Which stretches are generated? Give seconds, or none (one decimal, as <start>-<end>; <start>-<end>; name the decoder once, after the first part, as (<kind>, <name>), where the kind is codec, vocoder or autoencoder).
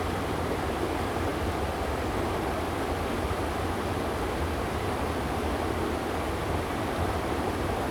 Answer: none